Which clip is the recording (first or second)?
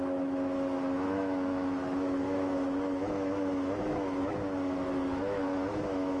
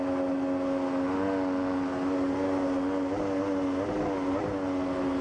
second